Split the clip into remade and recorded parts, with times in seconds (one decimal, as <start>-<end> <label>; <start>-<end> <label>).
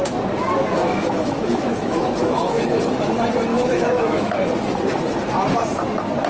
0.0-0.8 recorded; 0.8-2.8 remade; 2.8-3.5 recorded; 3.5-4.5 remade; 4.5-6.3 recorded